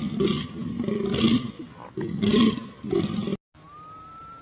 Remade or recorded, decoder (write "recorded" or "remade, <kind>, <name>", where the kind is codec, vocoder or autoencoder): recorded